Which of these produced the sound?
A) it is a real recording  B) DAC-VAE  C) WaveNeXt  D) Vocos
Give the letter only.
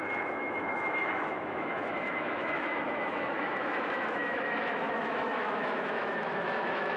B